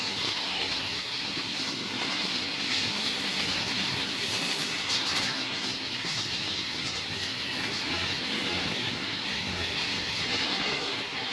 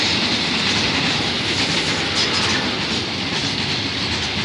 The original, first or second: second